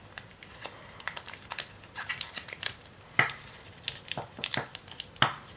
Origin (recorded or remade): recorded